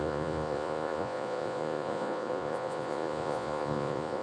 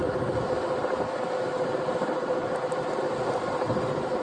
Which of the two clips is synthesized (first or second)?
first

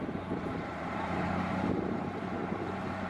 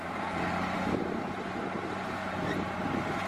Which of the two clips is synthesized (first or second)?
first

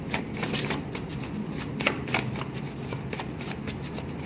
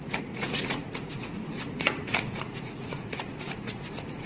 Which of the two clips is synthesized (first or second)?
second